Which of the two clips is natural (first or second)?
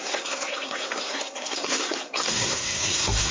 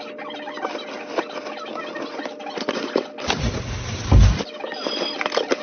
second